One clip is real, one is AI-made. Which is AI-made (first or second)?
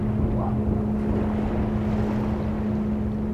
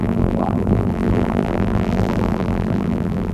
second